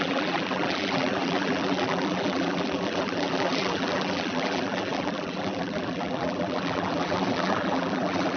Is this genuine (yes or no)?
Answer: no